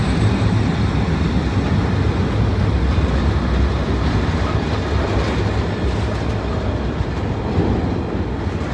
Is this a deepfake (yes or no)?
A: no